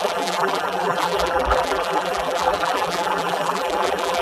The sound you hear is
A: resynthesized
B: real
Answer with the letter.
A